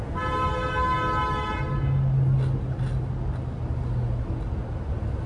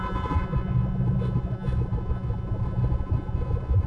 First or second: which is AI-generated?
second